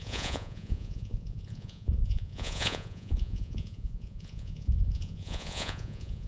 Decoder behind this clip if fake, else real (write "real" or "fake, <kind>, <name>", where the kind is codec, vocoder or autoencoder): fake, vocoder, Vocos